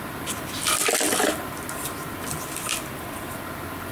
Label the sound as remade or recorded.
remade